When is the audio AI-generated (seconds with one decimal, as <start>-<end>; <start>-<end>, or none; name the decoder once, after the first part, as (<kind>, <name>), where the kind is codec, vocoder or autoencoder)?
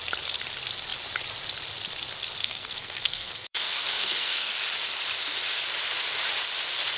2.4-4.5 (codec, SNAC)